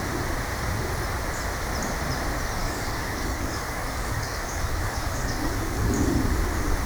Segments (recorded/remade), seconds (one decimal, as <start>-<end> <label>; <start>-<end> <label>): 0.0-2.6 recorded; 2.6-6.1 remade; 6.1-6.9 recorded